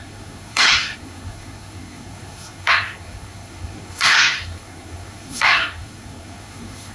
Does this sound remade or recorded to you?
remade